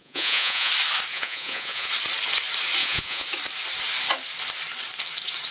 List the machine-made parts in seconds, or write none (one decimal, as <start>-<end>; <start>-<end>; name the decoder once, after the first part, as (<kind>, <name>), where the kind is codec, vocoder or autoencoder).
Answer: 0.0-0.7 (vocoder, Vocos); 1.1-1.9; 2.8-3.3